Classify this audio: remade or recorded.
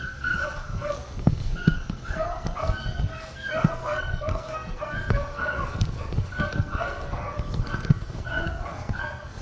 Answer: remade